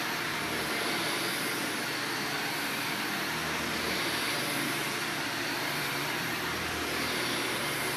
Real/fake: fake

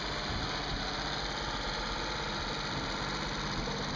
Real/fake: real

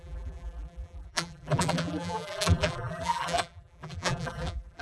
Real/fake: fake